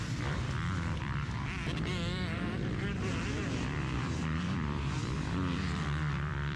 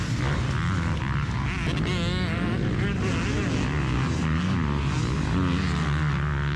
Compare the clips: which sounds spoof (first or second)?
first